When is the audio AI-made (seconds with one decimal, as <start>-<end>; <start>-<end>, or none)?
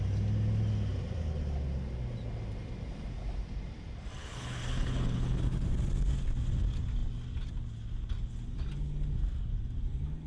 4.2-5.4